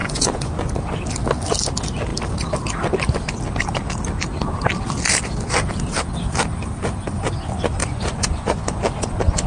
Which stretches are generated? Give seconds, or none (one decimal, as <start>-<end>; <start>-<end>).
0.0-0.7; 7.8-8.8